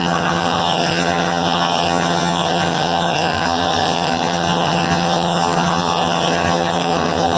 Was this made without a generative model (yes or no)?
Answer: no